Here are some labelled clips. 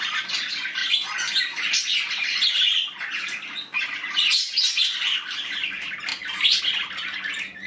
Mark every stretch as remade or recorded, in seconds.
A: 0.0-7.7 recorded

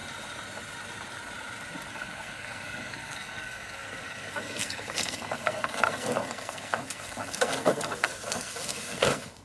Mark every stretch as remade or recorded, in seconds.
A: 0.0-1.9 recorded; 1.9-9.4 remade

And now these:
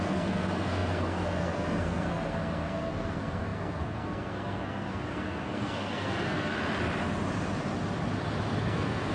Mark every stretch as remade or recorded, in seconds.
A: 0.0-6.5 remade; 6.5-8.6 recorded; 8.6-9.1 remade

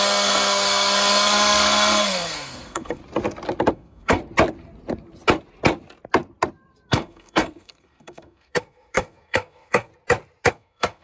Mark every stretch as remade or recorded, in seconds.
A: 0.0-3.0 remade; 3.0-3.7 recorded; 3.7-4.2 remade; 4.2-6.9 recorded; 6.9-9.9 remade; 9.9-10.5 recorded; 10.5-11.0 remade